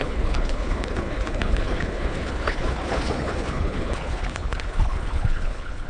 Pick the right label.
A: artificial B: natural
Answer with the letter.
A